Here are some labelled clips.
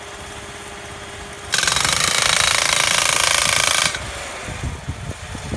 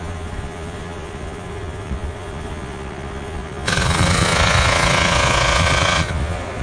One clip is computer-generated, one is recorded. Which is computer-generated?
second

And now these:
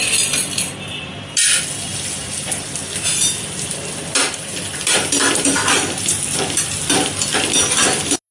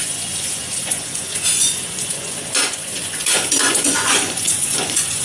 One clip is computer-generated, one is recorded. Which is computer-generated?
second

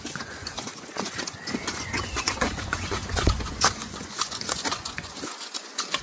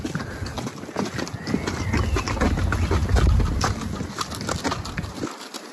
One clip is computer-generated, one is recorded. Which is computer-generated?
first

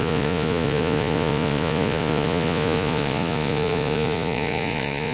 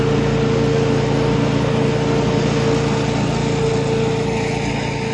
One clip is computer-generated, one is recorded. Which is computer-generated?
first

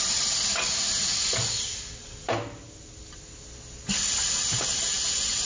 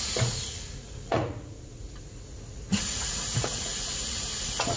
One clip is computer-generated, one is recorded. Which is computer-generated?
second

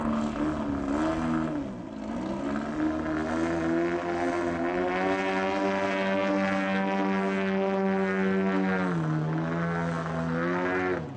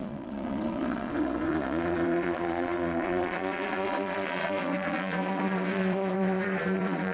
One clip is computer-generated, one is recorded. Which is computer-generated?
second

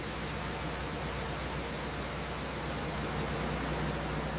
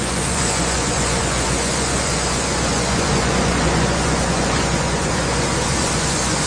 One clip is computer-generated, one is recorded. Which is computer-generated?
second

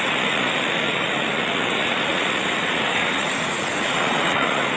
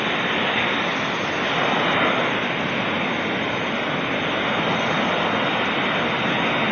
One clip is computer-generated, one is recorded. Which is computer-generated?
first